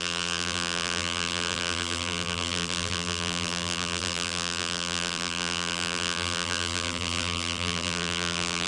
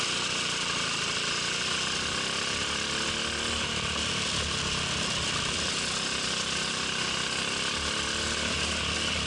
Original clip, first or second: second